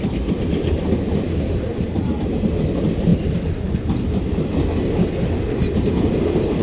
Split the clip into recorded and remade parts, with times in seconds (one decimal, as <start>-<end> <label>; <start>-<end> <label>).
0.0-6.6 recorded